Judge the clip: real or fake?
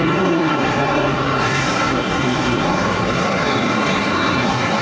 fake